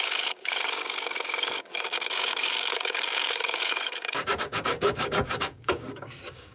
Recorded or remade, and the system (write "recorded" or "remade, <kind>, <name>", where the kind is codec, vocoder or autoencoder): remade, codec, DAC